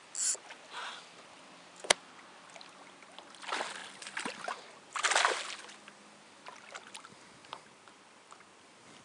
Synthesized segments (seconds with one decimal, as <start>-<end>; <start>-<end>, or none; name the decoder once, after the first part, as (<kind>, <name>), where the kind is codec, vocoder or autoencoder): 7.4-8.0 (vocoder, BigVGAN v2)